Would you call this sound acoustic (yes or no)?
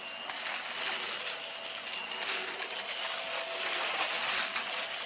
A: yes